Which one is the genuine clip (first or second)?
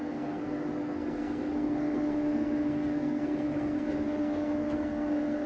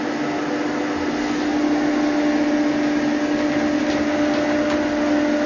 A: second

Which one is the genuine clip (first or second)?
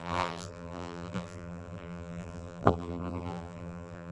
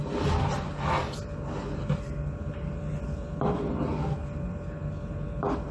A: second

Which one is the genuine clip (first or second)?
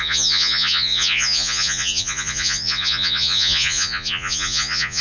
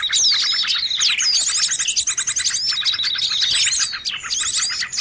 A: second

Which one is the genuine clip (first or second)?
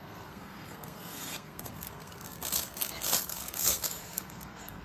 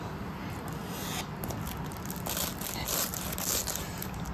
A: second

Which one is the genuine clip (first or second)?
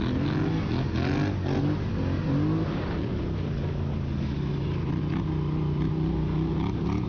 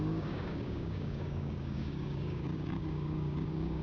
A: first